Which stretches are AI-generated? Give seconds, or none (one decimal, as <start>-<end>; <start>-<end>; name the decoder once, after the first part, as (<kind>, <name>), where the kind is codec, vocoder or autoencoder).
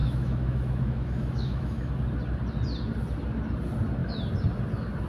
0.0-1.9 (autoencoder, DAC-VAE)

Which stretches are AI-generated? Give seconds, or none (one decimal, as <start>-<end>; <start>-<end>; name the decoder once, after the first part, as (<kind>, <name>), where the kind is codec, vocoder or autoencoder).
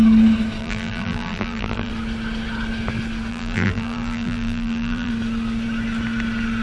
0.6-1.9 (vocoder, BigVGAN v2); 3.3-5.1